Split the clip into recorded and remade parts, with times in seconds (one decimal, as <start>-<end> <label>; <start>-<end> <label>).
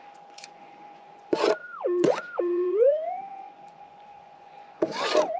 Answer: 0.0-5.4 remade